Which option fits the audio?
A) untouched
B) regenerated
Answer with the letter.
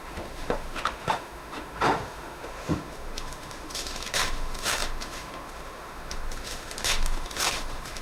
B